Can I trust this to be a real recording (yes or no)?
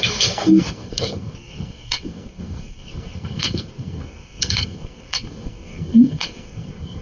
no